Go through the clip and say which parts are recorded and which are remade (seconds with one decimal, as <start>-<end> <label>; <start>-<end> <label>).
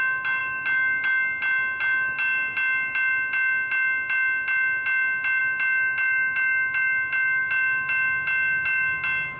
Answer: 0.0-9.4 recorded